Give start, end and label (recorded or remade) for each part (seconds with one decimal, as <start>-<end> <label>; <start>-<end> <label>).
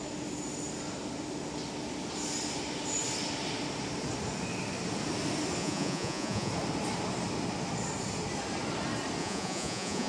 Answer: 0.0-5.6 recorded; 5.6-6.5 remade; 6.5-9.2 recorded; 9.2-10.1 remade